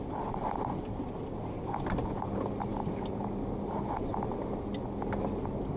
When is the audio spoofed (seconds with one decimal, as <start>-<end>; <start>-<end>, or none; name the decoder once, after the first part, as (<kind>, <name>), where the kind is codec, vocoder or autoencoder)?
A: none